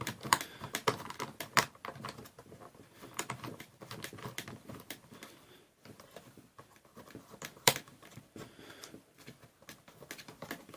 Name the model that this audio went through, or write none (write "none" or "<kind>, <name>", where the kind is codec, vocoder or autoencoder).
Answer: vocoder, BigVGAN v2